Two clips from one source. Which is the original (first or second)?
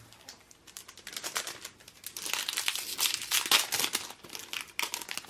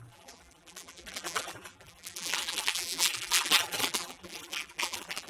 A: first